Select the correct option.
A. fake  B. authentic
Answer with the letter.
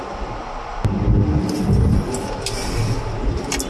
B